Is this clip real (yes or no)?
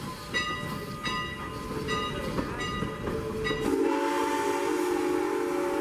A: yes